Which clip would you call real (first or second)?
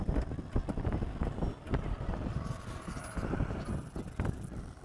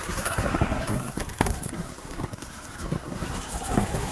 first